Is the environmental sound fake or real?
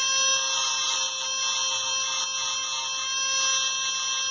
real